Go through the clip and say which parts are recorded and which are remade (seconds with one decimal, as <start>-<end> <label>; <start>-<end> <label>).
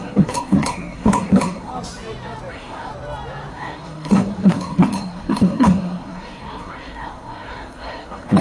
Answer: 0.0-1.7 remade; 1.7-2.5 recorded; 2.5-2.9 remade; 2.9-3.5 recorded; 3.5-8.4 remade